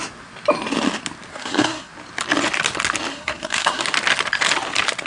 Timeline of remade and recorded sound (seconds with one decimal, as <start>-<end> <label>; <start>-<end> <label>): 0.0-1.3 recorded; 1.3-1.9 remade; 1.9-3.1 recorded; 3.1-3.8 remade; 3.8-5.1 recorded

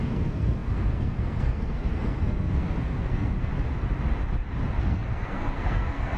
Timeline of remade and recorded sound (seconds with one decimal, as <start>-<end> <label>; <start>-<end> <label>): 0.0-3.5 remade; 3.5-4.8 recorded; 4.8-6.2 remade

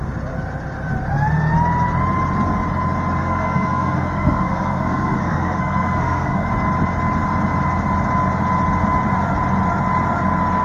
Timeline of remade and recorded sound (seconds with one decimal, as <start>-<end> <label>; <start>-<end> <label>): 0.0-3.2 recorded; 3.2-6.5 remade; 6.5-10.6 recorded

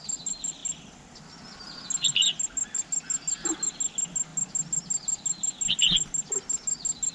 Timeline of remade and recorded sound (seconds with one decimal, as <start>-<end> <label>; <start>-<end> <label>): 0.0-7.1 recorded

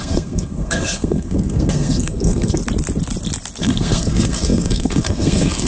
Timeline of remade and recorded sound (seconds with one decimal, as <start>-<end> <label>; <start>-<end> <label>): 0.0-2.6 remade; 2.6-3.6 recorded; 3.6-5.7 remade

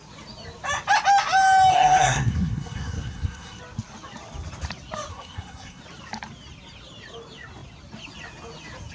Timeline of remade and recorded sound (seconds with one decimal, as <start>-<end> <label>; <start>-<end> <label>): 0.0-1.7 recorded; 1.7-3.6 remade; 3.6-5.1 recorded; 5.1-5.8 remade; 5.8-8.9 recorded

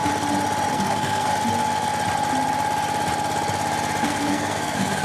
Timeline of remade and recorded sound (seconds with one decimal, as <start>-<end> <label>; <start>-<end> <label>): 0.0-0.7 recorded; 0.7-1.3 remade; 1.3-4.0 recorded; 4.0-5.0 remade

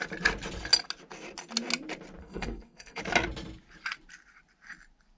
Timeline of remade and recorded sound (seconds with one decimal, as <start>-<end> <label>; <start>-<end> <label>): 0.0-2.2 recorded; 2.2-3.0 remade; 3.0-5.2 recorded